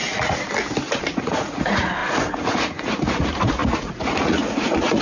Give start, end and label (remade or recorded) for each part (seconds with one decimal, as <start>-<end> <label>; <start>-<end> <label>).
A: 0.0-1.0 recorded; 1.0-5.0 remade